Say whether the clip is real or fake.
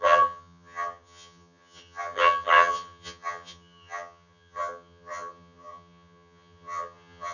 fake